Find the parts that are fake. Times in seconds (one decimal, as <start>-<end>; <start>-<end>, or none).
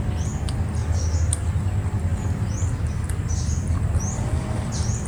0.0-0.8; 1.3-2.1; 2.8-5.1